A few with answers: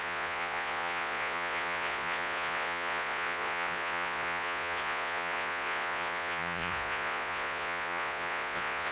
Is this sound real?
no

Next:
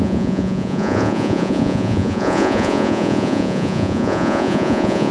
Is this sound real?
no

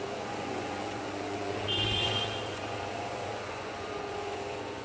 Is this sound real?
no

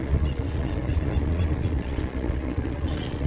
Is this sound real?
no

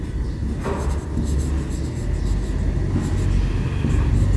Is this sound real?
yes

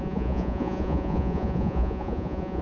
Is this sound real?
no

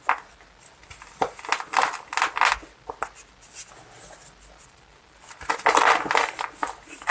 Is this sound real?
yes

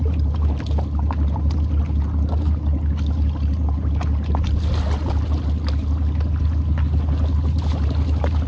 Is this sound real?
yes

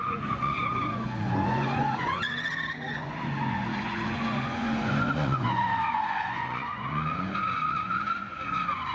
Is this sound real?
no